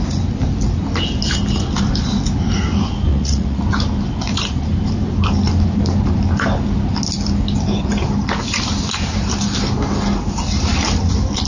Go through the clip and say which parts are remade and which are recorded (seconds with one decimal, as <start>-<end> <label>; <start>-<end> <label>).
0.0-3.1 recorded; 3.1-3.6 remade; 3.6-11.5 recorded